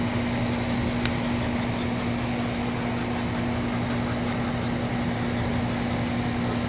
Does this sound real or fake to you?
real